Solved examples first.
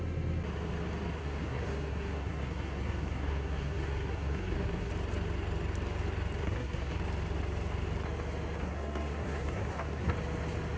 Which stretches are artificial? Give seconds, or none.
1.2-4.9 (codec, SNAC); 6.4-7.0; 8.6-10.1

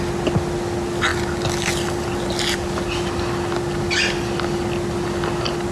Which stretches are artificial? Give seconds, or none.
none

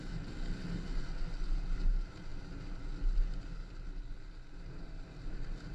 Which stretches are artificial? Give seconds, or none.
none